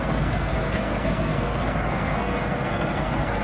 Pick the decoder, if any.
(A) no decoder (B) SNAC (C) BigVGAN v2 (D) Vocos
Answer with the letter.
B